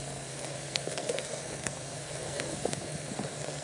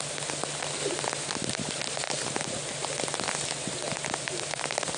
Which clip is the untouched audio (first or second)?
second